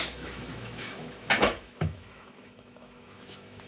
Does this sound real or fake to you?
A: fake